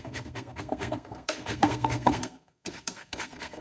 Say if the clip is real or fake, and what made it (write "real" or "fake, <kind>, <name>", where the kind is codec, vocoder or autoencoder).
fake, codec, SNAC